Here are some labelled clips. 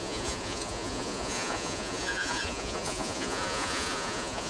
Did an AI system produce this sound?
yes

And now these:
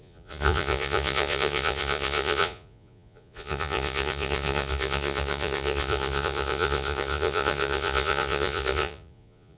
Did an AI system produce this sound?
yes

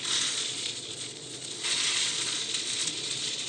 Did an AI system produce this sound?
yes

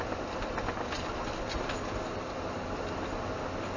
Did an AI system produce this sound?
no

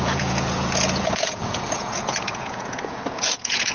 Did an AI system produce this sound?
yes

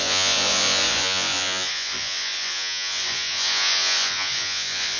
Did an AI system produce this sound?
yes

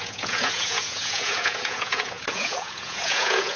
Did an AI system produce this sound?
yes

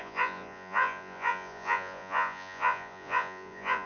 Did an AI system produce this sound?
yes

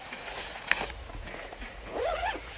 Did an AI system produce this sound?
yes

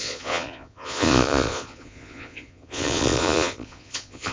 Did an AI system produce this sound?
yes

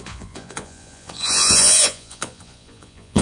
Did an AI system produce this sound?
yes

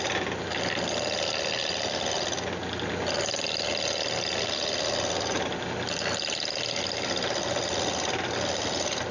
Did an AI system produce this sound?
no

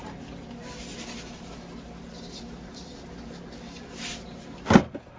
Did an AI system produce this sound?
no